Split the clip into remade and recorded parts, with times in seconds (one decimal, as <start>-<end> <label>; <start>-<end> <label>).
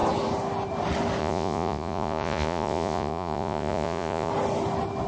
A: 0.0-1.2 recorded; 1.2-4.3 remade; 4.3-5.1 recorded